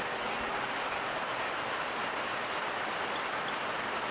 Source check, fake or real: real